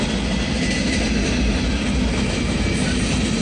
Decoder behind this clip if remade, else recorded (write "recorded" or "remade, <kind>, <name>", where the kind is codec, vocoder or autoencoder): recorded